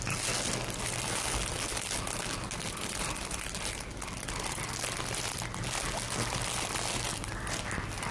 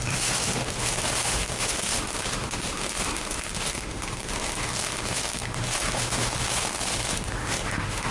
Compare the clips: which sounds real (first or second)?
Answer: first